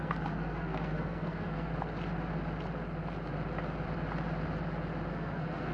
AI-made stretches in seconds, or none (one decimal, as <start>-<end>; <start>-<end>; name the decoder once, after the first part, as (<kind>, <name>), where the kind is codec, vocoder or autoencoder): 0.0-1.7 (codec, SNAC); 5.1-5.7

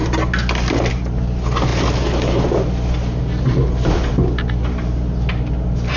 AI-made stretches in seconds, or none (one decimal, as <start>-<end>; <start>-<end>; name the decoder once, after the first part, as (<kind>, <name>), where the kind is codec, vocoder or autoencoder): none

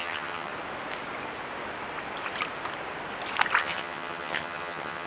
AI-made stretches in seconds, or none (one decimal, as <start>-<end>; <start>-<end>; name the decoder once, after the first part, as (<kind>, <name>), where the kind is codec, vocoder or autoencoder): 0.0-0.5 (vocoder, HiFi-GAN); 3.6-5.1

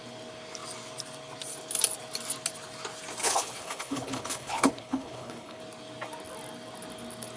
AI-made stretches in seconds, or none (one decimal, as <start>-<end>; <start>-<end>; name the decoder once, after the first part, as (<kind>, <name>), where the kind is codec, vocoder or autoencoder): 3.2-5.6 (codec, HILCodec)

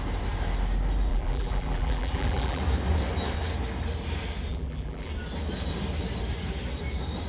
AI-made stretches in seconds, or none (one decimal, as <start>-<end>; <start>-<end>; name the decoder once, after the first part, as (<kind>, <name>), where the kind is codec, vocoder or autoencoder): 1.1-2.6 (vocoder, BigVGAN v2); 4.5-5.1

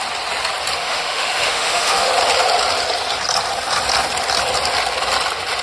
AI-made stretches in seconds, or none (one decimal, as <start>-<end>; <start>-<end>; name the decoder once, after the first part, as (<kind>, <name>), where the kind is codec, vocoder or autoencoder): 0.8-2.1 (autoencoder, DAC-VAE)

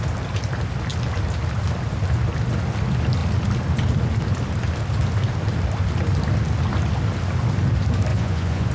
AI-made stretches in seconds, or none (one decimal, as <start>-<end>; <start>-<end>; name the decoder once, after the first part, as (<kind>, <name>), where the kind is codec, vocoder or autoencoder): 8.1-8.7 (vocoder, Vocos)